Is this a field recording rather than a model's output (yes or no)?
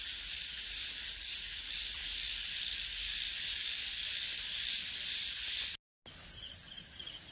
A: yes